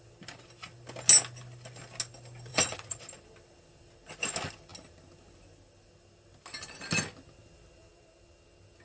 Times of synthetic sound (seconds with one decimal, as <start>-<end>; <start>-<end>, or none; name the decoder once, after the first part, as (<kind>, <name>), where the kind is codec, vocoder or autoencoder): 2.5-3.0 (vocoder, Vocos)